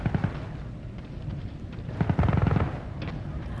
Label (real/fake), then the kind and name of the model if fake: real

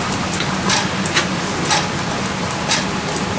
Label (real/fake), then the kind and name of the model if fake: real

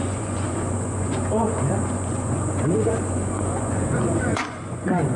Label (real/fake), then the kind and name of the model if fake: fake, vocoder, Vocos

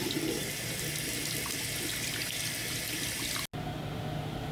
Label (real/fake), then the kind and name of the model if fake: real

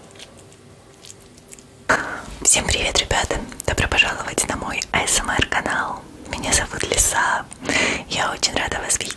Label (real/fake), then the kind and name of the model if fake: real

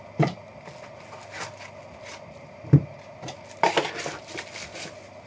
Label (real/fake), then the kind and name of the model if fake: real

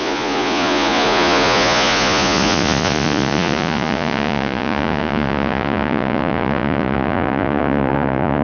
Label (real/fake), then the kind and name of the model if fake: fake, vocoder, Vocos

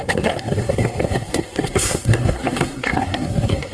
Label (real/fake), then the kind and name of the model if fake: fake, codec, SNAC